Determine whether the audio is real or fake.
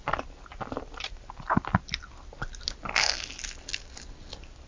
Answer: real